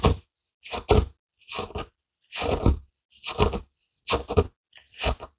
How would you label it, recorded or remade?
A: recorded